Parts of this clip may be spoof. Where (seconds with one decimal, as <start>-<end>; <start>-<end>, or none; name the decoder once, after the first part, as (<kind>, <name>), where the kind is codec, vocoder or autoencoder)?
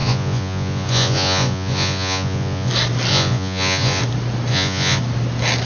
0.0-2.7 (vocoder, Vocos); 3.1-4.0; 4.5-5.0